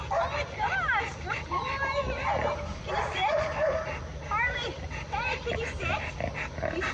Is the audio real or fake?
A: real